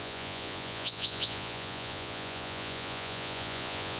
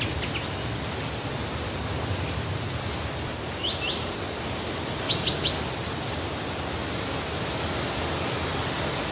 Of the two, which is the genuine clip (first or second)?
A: second